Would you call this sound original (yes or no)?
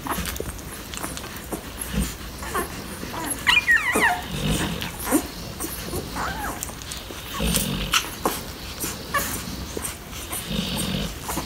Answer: yes